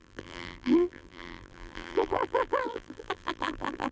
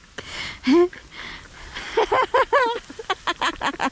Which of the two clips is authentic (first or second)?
second